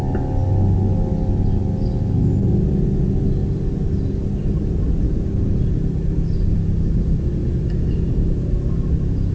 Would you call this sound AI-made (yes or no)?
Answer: no